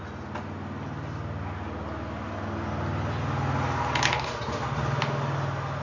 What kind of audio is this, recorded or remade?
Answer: recorded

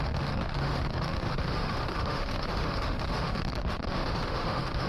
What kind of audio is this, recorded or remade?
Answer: remade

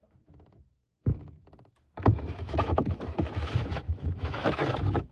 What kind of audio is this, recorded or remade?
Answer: remade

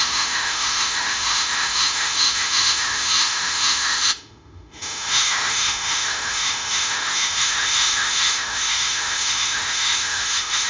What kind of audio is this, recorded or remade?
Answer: remade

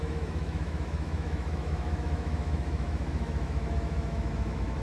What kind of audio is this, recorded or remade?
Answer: remade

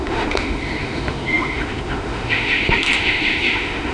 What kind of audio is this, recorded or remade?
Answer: remade